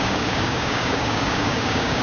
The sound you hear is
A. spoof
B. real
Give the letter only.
A